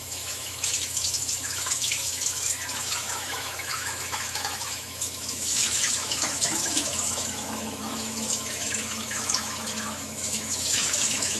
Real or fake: fake